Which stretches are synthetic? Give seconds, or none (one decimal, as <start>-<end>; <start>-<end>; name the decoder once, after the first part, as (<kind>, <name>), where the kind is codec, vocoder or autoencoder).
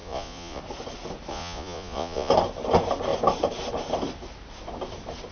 0.0-0.6 (vocoder, Vocos); 1.3-2.3